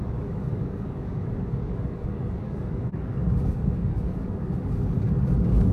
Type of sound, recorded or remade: remade